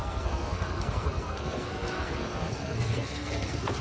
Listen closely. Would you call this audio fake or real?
fake